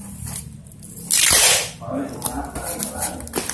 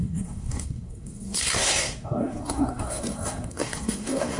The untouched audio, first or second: first